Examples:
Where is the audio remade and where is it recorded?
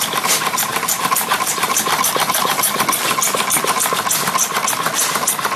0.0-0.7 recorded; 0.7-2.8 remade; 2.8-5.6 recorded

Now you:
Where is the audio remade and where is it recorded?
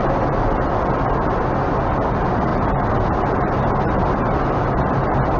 0.0-5.4 recorded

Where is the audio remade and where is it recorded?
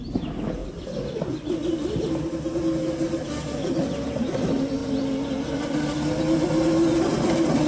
0.0-7.7 recorded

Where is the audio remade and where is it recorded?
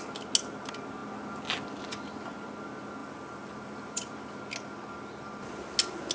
0.0-3.0 recorded; 3.0-4.4 remade; 4.4-6.1 recorded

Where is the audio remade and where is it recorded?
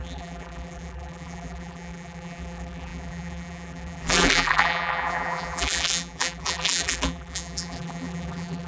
0.0-8.7 remade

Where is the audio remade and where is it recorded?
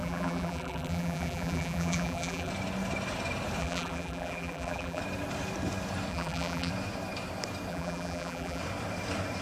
0.0-2.5 remade; 2.5-3.6 recorded; 3.6-5.0 remade; 5.0-6.1 recorded; 6.1-6.7 remade; 6.7-7.7 recorded; 7.7-8.6 remade; 8.6-9.4 recorded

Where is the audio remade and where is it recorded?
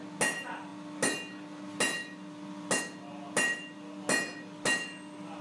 0.0-5.4 recorded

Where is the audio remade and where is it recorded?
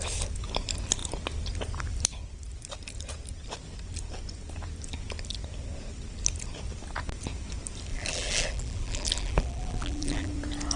0.0-7.9 recorded; 7.9-10.3 remade; 10.3-10.8 recorded